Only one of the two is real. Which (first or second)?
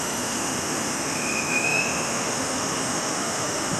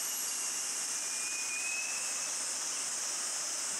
second